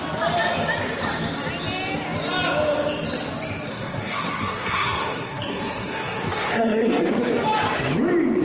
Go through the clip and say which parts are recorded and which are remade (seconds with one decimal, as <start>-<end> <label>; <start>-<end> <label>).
0.0-3.7 recorded; 3.7-7.3 remade; 7.3-8.4 recorded